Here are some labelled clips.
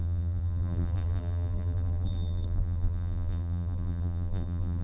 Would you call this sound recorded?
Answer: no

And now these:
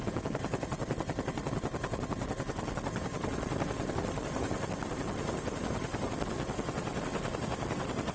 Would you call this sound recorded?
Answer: yes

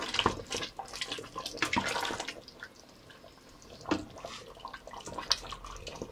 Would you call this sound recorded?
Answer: yes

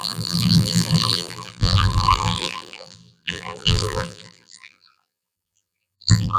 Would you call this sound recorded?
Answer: no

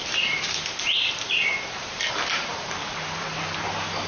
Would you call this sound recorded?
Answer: no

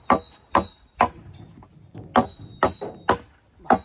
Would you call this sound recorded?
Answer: yes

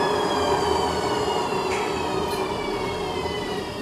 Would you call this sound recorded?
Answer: yes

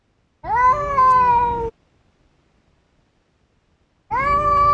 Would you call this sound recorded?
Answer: yes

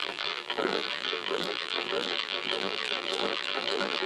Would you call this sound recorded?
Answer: no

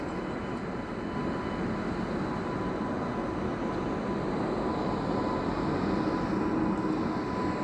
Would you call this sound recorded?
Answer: yes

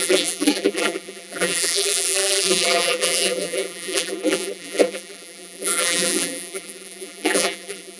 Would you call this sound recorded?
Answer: no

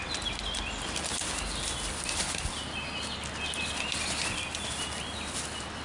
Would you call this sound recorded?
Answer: yes